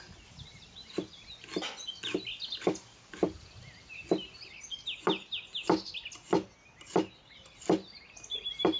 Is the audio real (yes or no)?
yes